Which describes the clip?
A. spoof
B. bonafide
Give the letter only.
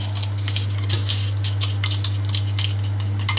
B